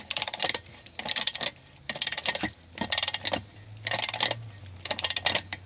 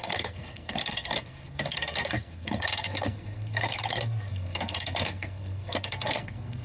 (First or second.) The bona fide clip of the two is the first